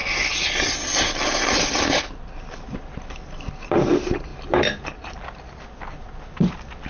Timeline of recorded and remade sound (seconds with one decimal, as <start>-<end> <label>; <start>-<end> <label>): 0.0-6.9 recorded